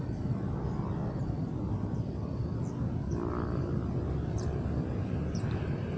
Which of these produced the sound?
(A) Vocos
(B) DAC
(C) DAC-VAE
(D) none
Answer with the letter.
D